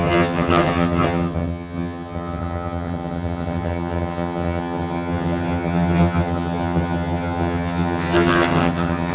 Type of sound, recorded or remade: remade